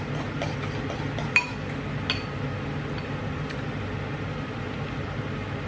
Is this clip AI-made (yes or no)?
no